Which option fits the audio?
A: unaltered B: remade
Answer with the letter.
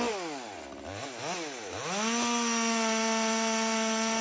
A